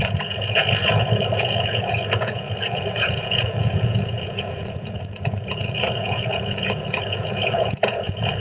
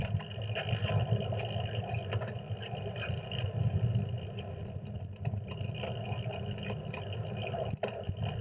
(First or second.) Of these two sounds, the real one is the second